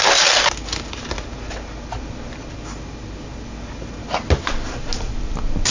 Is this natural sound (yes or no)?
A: yes